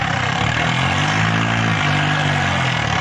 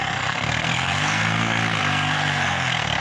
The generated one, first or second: second